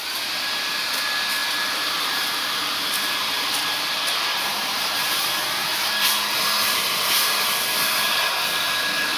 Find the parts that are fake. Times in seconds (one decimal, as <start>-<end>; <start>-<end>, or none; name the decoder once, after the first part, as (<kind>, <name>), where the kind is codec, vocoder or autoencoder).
1.4-5.1 (vocoder, BigVGAN v2)